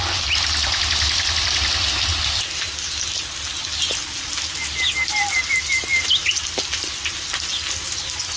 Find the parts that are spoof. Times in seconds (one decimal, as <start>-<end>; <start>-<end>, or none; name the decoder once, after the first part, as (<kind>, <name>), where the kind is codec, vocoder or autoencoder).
5.9-6.4 (vocoder, BigVGAN v2)